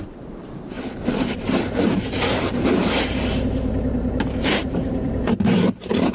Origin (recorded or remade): remade